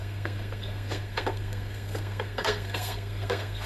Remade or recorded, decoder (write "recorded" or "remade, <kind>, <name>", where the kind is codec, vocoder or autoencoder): remade, codec, SNAC